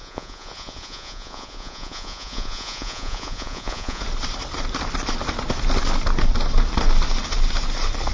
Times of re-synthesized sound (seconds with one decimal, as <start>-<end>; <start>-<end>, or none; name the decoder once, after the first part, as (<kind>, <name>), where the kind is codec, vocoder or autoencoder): 0.0-4.0 (vocoder, Vocos)